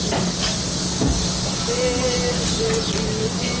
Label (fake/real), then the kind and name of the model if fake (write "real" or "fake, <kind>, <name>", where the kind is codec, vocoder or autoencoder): real